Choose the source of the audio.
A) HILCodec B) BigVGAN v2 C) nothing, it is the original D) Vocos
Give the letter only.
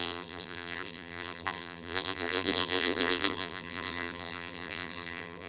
B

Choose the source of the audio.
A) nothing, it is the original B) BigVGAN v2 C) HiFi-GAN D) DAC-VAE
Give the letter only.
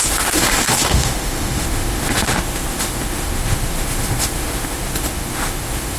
D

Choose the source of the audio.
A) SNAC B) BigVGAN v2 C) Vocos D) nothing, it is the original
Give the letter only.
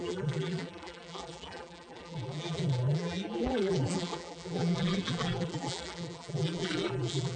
B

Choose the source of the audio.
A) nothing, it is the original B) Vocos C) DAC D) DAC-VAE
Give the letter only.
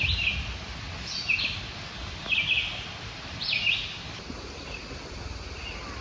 A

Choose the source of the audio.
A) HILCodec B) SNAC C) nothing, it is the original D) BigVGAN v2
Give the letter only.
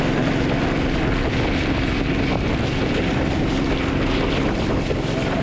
C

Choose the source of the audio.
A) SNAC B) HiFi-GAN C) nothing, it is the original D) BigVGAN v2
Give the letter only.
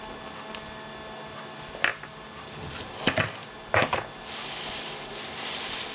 C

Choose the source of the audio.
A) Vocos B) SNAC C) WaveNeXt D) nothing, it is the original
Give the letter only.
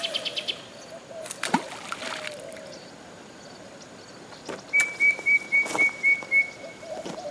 D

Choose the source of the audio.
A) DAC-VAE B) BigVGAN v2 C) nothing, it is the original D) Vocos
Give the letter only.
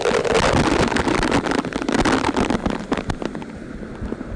C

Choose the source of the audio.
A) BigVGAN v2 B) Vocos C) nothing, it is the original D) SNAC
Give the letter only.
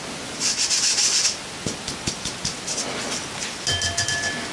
C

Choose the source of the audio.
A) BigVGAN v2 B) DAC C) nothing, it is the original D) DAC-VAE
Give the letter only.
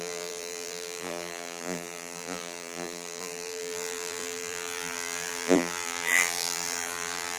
A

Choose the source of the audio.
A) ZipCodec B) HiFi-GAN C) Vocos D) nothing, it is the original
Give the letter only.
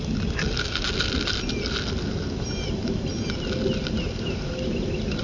D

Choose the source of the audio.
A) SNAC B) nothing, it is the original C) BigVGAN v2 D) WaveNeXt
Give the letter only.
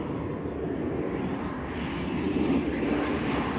B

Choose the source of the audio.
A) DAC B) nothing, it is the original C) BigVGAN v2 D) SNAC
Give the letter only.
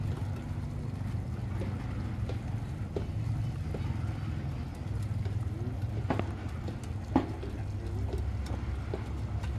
B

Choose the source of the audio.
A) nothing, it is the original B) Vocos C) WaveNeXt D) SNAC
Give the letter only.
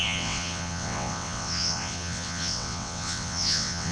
C